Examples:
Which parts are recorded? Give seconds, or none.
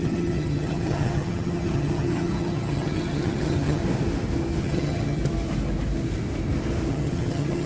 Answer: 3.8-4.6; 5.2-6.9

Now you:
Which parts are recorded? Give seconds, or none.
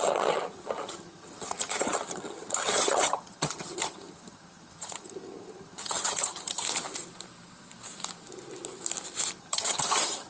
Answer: 6.6-9.4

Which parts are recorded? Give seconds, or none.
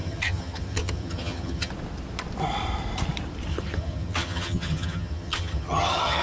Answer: 1.7-3.5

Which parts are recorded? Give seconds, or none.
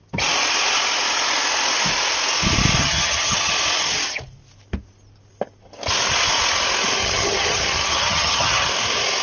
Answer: 0.0-2.8; 3.5-7.0; 8.7-9.2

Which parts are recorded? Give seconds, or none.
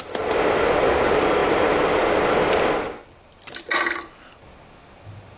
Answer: 0.0-5.4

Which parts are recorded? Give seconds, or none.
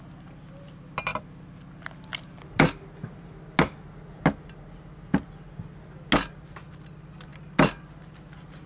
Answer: 0.0-8.7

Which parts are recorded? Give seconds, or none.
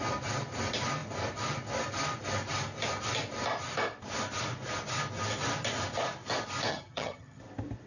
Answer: 0.0-6.7; 7.4-7.9